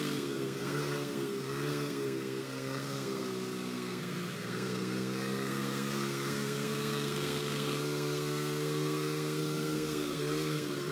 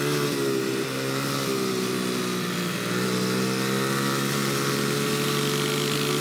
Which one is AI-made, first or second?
first